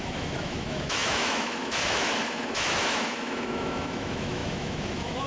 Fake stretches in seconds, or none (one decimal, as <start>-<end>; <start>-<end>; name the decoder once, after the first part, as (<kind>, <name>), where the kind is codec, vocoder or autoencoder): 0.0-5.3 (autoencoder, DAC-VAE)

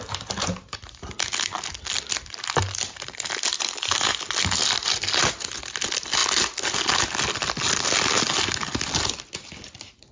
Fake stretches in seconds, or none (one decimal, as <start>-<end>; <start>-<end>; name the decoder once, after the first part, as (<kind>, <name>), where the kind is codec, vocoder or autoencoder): none

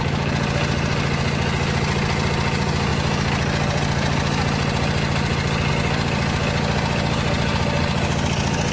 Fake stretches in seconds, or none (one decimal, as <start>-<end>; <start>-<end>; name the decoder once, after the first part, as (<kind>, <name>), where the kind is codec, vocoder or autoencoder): none

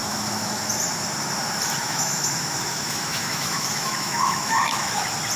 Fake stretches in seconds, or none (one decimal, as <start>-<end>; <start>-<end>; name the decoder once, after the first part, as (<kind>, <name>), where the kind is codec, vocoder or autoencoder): 0.0-0.7 (autoencoder, DAC-VAE); 1.8-5.0

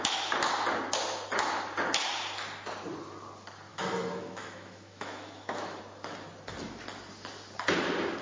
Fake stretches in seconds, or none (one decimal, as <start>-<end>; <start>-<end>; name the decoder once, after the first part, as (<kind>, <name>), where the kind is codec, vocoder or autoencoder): 3.7-5.8 (autoencoder, DAC-VAE)

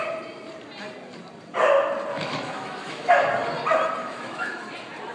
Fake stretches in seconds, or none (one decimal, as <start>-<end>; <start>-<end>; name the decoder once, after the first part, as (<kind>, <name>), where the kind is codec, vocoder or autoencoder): 2.1-3.1 (autoencoder, DAC-VAE); 4.0-4.6